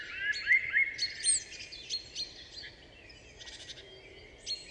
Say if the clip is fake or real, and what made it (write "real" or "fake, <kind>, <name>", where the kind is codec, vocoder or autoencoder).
real